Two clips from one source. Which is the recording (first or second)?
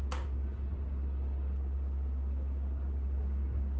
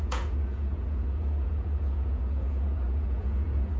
first